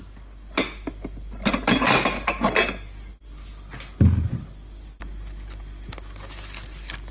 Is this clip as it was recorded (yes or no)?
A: yes